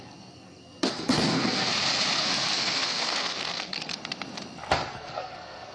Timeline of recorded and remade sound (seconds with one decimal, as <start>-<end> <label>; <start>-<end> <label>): 0.0-1.7 remade; 1.7-2.2 recorded; 2.2-3.9 remade; 3.9-4.9 recorded; 4.9-5.7 remade